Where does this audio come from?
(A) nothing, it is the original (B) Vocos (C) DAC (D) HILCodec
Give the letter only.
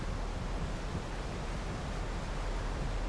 A